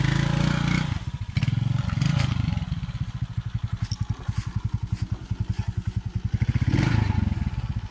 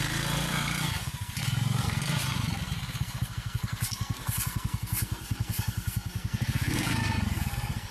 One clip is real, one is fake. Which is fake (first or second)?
second